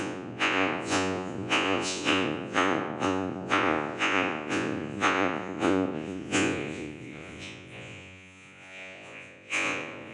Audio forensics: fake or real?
fake